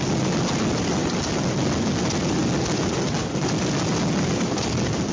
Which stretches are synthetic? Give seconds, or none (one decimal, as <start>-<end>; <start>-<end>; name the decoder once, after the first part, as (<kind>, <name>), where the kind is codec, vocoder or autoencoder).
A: none